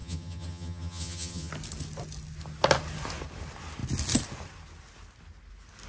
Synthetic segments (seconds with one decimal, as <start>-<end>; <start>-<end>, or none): 0.0-1.5